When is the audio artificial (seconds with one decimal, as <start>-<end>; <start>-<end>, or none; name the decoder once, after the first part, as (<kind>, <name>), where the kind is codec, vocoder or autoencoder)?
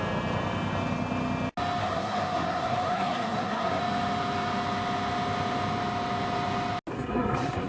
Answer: 1.8-3.8 (codec, SNAC); 6.9-7.7